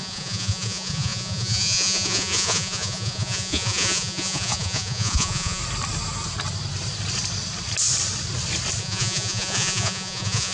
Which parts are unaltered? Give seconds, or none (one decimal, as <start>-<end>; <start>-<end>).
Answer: 5.6-8.8